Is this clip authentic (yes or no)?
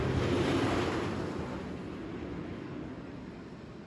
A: yes